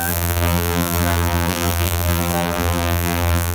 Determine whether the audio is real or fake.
fake